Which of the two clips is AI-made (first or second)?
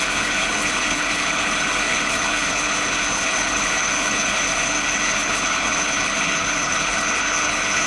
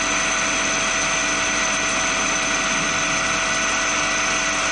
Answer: first